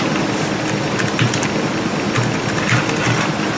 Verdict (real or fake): real